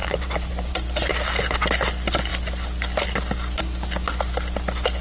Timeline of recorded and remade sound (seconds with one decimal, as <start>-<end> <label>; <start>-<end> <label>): 0.0-0.7 remade; 0.7-5.0 recorded

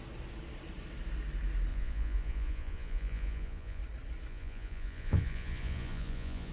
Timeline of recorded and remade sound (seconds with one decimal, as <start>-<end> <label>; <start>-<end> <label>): 0.0-1.7 recorded; 1.7-3.8 remade; 3.8-4.3 recorded; 4.3-6.5 remade

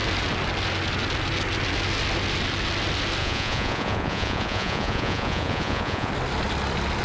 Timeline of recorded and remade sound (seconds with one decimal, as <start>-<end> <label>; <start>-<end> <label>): 0.0-3.2 recorded; 3.2-6.1 remade; 6.1-7.0 recorded

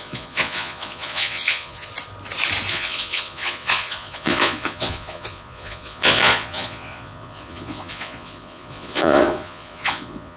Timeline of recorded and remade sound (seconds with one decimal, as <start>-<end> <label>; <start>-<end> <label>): 0.0-1.9 remade; 1.9-2.7 recorded; 2.7-10.4 remade